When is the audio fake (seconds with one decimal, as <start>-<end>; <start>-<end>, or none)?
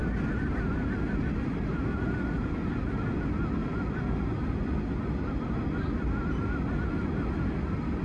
none